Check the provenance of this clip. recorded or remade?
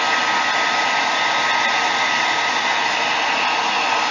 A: recorded